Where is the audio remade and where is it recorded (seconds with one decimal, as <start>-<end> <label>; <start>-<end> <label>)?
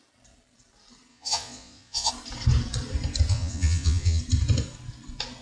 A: 0.0-1.1 recorded; 1.1-2.1 remade; 2.1-3.3 recorded; 3.3-4.2 remade; 4.2-5.4 recorded